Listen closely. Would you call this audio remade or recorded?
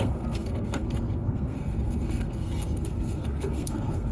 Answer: remade